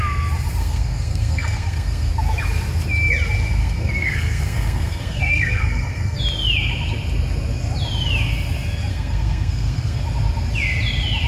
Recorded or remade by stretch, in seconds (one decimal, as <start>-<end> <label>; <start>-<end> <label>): 0.0-0.6 recorded; 0.6-2.1 remade; 2.1-3.6 recorded; 3.6-6.2 remade; 6.2-8.9 recorded; 8.9-10.0 remade; 10.0-11.3 recorded

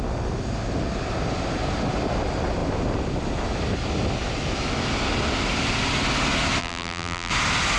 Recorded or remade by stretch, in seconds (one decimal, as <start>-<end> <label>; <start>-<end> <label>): 0.0-6.6 recorded; 6.6-7.3 remade; 7.3-7.8 recorded

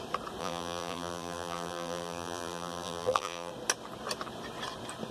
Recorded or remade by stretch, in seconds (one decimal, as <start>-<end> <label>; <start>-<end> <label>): 0.0-0.4 recorded; 0.4-3.5 remade; 3.5-5.1 recorded

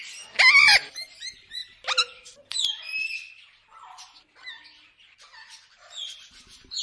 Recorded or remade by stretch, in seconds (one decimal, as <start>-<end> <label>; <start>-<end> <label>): 0.0-6.8 recorded